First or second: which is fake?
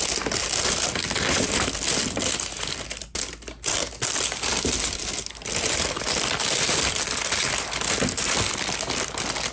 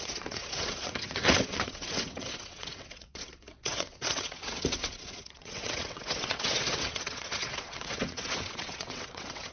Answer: second